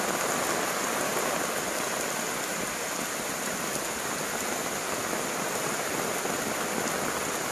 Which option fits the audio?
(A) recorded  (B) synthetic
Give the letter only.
A